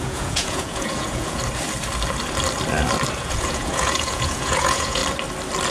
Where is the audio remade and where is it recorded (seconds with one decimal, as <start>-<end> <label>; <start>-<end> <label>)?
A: 0.0-1.4 remade; 1.4-3.2 recorded; 3.2-5.0 remade; 5.0-5.7 recorded